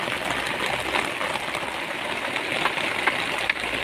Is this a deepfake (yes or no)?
no